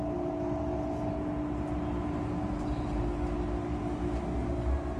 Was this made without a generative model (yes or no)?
yes